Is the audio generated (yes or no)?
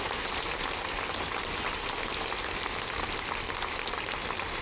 no